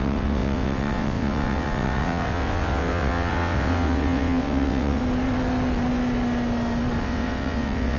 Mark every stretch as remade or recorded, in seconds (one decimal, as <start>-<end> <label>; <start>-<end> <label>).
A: 0.0-5.0 remade; 5.0-7.0 recorded; 7.0-8.0 remade